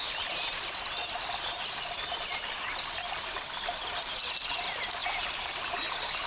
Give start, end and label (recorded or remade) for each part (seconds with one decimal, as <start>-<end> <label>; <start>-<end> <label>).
0.0-1.0 recorded; 1.0-2.8 remade; 2.8-5.0 recorded; 5.0-5.7 remade; 5.7-6.3 recorded